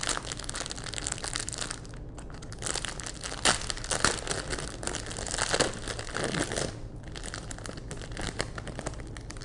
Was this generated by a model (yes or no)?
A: no